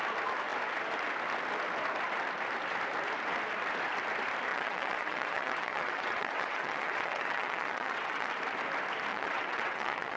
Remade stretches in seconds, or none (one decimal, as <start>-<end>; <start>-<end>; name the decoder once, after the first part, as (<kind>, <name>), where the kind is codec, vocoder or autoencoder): 4.5-8.3 (vocoder, WaveNeXt); 9.1-10.2